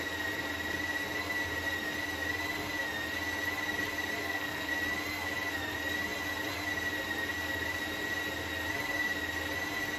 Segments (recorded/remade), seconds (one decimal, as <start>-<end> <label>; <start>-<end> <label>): 0.0-4.2 recorded; 4.2-4.7 remade; 4.7-10.0 recorded